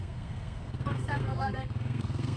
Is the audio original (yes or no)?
no